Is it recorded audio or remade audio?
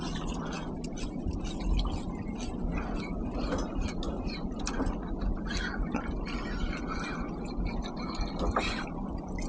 recorded